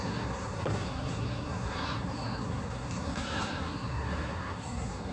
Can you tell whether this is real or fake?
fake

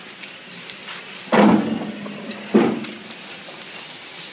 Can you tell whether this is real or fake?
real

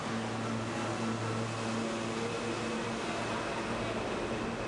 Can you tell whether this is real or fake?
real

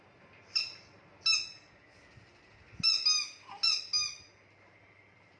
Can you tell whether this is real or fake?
real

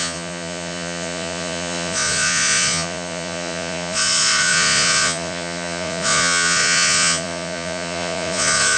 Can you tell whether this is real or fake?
fake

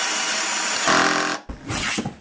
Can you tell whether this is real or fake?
real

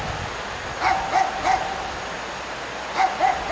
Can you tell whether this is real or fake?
real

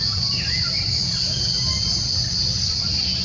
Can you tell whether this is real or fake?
real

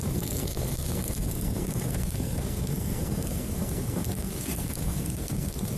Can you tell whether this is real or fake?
fake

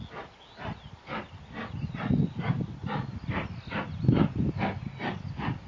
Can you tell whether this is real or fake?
real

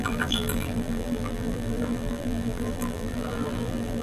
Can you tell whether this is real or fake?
fake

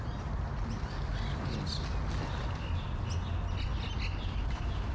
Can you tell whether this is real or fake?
real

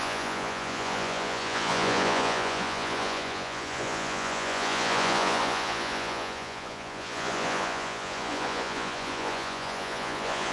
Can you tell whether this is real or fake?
fake